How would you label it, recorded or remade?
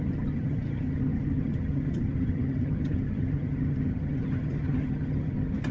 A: remade